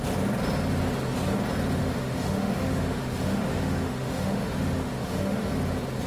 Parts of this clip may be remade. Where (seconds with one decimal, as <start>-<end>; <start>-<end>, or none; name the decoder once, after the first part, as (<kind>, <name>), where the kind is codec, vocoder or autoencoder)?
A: 1.8-5.5 (autoencoder, DAC-VAE)